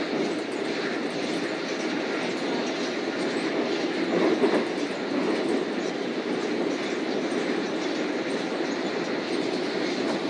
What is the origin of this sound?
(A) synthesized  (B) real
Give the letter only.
B